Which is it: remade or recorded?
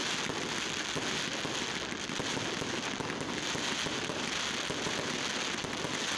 recorded